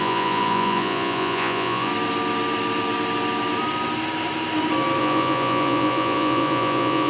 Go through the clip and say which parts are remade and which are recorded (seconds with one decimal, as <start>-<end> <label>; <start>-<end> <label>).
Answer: 0.0-1.9 remade; 1.9-5.0 recorded; 5.0-7.1 remade